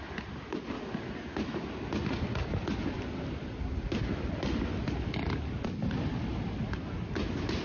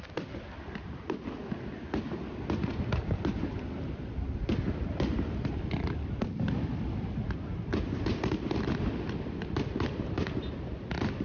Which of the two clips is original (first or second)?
first